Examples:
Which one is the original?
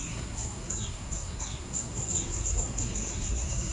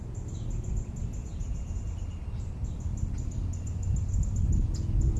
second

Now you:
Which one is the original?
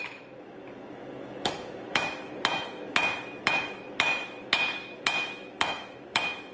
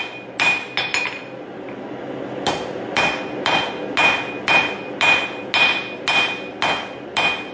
second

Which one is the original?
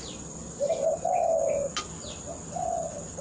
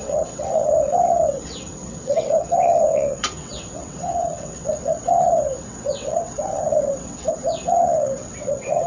first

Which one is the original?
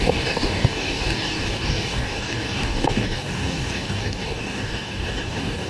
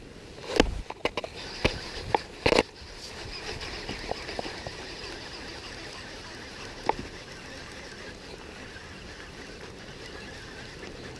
second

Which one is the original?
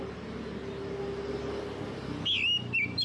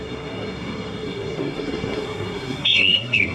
first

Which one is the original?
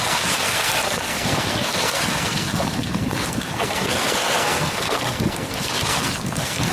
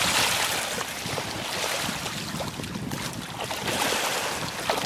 second